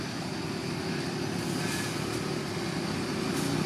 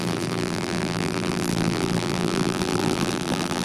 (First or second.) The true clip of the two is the first